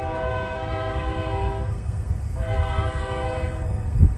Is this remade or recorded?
remade